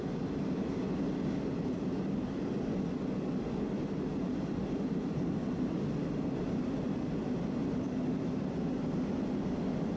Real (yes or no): yes